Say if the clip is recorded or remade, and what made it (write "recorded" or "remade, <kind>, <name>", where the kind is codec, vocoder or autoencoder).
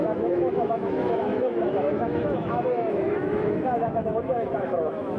remade, autoencoder, DAC-VAE